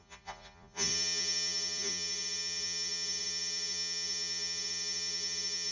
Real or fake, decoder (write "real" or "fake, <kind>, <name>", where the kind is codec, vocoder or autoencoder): fake, vocoder, Vocos